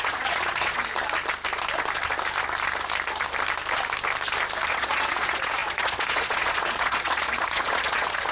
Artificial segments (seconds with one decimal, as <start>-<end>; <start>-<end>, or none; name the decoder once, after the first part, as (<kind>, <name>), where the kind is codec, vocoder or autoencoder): 0.0-0.9 (vocoder, Vocos); 4.7-8.3